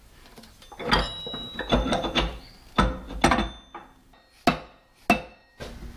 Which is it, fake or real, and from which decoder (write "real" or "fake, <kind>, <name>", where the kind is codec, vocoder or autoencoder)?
real